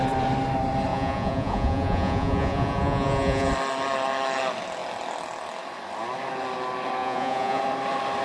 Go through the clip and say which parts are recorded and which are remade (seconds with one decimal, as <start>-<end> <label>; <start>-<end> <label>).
0.0-0.9 recorded; 0.9-3.5 remade; 3.5-7.0 recorded; 7.0-7.6 remade; 7.6-8.2 recorded